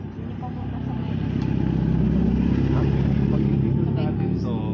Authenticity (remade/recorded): recorded